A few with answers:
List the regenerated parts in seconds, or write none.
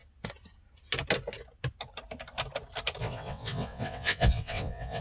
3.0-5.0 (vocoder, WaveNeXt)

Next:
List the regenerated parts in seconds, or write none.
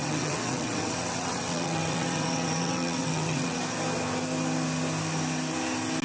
0.0-3.6 (vocoder, WaveNeXt)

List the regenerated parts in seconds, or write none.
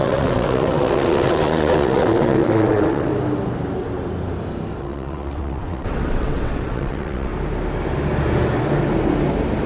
0.0-3.1 (vocoder, WaveNeXt); 4.8-7.3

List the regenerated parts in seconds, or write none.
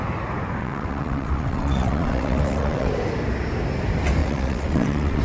0.6-2.9 (vocoder, WaveNeXt); 4.2-5.2